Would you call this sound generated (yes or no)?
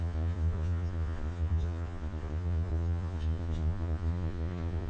yes